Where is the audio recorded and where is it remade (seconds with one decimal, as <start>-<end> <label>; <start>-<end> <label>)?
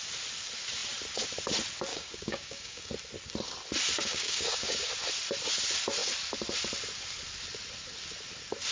0.0-1.9 recorded; 1.9-2.9 remade; 2.9-4.0 recorded; 4.0-4.9 remade; 4.9-8.7 recorded